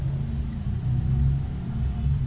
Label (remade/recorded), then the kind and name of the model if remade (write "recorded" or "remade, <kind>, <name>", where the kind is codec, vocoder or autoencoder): recorded